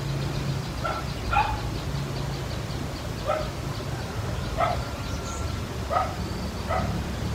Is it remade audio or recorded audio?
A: recorded